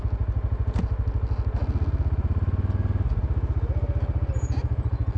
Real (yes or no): yes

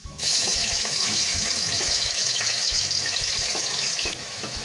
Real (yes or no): no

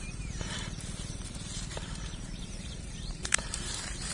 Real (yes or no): no